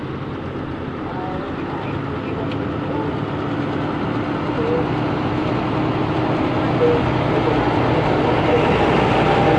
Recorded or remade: recorded